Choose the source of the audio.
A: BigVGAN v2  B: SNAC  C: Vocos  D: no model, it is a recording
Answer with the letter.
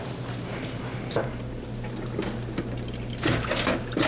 D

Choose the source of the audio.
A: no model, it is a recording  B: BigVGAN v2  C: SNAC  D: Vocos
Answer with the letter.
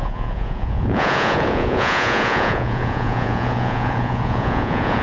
D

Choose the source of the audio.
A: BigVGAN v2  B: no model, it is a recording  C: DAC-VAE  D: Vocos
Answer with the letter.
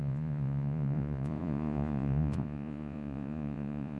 D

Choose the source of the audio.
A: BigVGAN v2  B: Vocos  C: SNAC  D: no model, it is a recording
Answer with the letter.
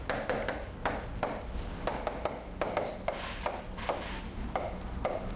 D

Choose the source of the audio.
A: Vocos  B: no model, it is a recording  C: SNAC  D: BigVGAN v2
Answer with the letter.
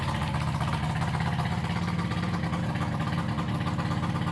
B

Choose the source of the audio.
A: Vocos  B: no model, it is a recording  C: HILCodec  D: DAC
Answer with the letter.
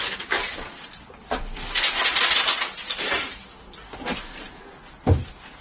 B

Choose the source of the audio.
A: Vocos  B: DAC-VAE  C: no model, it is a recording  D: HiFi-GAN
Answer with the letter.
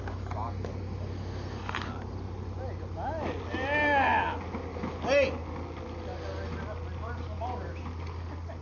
C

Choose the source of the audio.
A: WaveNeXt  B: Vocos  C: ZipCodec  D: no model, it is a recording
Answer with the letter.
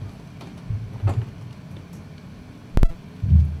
D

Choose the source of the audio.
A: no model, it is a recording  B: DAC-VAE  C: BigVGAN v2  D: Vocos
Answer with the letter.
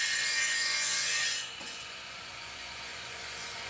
D